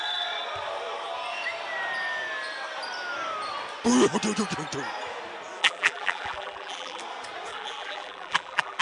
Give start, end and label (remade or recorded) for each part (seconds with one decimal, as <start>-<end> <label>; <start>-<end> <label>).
0.0-5.6 recorded; 5.6-7.0 remade; 7.0-7.5 recorded; 7.5-8.8 remade